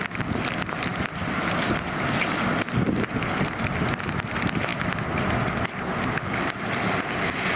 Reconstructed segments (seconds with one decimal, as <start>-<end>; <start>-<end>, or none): 5.9-6.7